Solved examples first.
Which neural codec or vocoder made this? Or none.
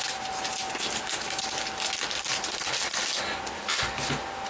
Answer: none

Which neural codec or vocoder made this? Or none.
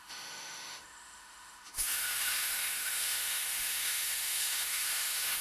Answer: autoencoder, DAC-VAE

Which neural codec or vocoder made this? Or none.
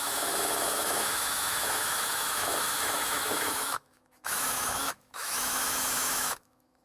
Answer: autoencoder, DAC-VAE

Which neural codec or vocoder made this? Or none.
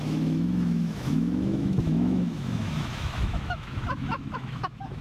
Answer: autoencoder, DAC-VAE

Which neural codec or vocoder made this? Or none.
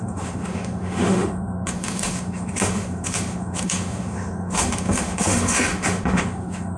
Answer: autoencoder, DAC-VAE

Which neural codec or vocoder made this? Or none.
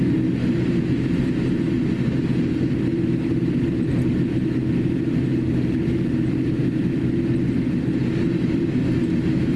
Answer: none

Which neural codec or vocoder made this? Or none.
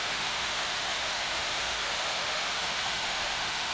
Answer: autoencoder, DAC-VAE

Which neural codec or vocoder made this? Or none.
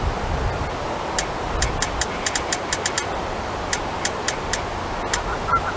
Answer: none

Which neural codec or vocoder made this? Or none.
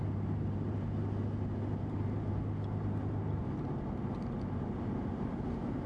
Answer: none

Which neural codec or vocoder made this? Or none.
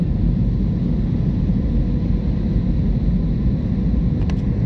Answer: none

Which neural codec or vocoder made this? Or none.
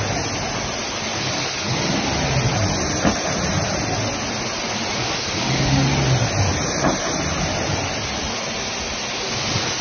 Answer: none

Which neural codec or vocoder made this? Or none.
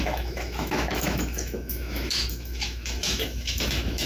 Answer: autoencoder, DAC-VAE